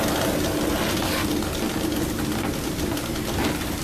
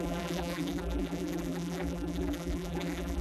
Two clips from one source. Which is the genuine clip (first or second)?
first